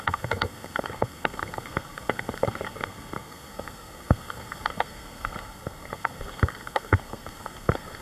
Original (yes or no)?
no